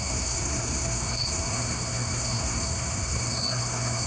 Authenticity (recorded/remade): remade